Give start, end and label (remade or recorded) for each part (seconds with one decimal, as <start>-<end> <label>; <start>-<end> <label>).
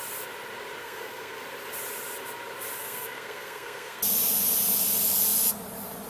0.0-0.8 recorded; 0.8-1.4 remade; 1.4-2.8 recorded; 2.8-4.0 remade; 4.0-6.1 recorded